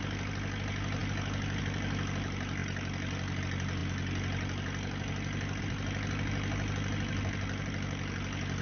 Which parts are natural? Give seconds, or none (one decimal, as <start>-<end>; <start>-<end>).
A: 0.0-8.6

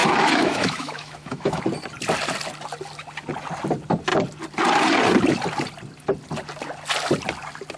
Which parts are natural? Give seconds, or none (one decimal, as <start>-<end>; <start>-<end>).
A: 1.6-7.8

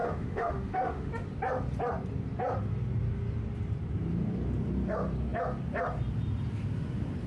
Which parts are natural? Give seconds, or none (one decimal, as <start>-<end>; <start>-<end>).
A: 1.1-7.3

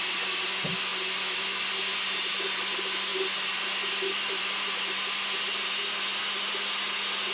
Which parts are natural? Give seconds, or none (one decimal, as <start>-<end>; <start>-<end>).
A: 0.0-7.3

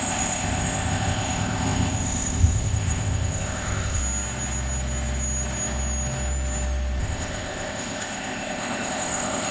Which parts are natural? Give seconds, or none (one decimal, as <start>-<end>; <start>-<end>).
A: 4.0-7.0